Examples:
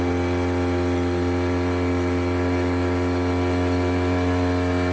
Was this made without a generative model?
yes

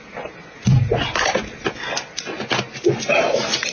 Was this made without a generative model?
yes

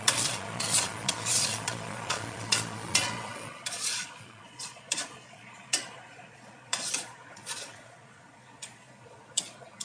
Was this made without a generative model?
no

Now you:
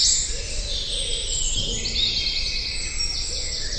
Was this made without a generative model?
yes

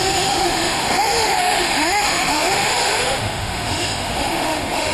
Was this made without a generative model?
no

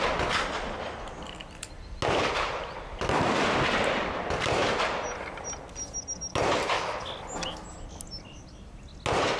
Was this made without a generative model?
yes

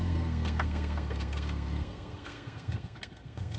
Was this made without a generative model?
no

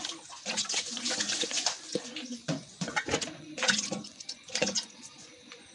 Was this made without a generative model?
no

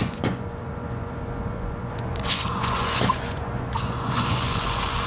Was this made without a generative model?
no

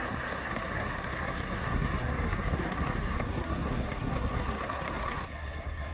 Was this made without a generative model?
no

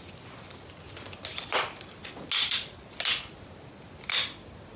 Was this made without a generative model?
yes